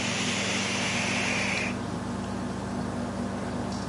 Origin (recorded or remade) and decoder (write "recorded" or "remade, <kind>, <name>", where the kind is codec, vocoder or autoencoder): recorded